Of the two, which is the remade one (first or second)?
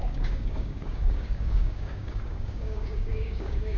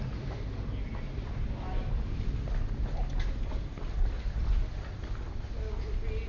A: first